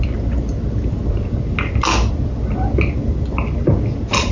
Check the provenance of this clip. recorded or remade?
recorded